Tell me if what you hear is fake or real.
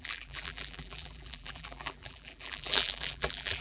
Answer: fake